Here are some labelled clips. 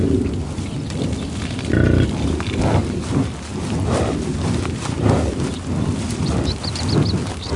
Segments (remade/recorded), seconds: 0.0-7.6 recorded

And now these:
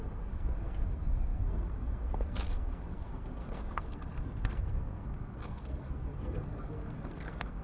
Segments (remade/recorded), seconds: 0.0-7.6 remade

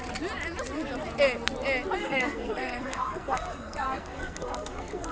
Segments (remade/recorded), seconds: 0.0-2.0 recorded; 2.0-5.1 remade